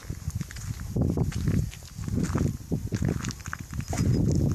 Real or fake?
real